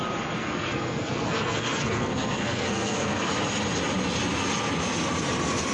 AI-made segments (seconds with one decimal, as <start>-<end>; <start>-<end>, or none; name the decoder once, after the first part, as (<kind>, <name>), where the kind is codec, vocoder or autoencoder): 0.4-3.3 (codec, SNAC)